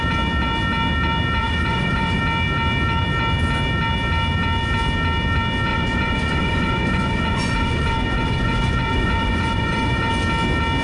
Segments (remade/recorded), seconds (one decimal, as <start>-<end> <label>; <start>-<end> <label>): 0.0-1.4 recorded; 1.4-2.2 remade; 2.2-5.7 recorded; 5.7-10.1 remade; 10.1-10.8 recorded